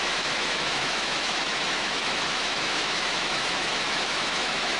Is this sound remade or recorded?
remade